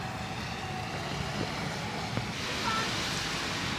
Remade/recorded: recorded